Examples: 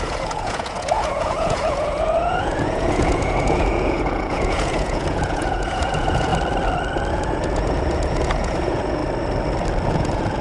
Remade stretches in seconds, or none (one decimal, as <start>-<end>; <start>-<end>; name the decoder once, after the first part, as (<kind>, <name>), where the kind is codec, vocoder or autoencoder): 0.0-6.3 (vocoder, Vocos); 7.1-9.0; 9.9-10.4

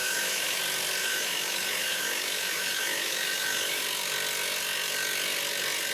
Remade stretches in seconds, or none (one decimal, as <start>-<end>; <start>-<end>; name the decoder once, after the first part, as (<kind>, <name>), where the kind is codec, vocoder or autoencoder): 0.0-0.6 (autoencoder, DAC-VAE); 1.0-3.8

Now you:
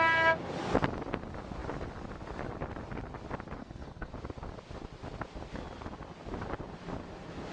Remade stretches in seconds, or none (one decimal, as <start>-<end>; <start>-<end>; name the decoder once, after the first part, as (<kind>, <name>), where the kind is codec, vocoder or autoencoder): 3.6-4.1 (codec, SNAC)

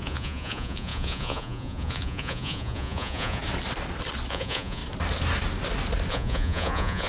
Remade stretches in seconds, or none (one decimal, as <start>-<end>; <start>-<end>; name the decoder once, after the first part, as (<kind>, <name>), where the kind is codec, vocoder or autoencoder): 0.0-3.4 (vocoder, Vocos); 4.3-4.8; 6.1-7.1